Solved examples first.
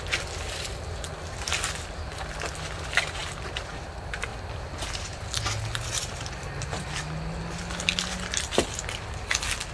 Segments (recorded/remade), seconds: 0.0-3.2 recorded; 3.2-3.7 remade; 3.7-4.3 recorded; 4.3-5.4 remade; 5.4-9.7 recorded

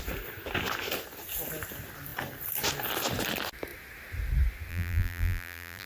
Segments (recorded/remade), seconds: 0.0-4.7 recorded; 4.7-5.9 remade

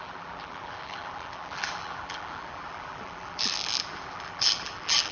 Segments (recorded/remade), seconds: 0.0-5.1 remade